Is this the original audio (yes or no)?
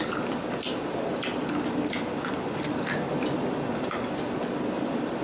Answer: yes